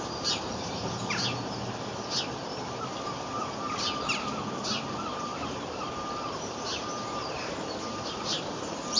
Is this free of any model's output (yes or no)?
no